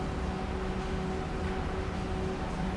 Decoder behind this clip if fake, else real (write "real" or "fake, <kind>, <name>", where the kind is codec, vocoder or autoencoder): real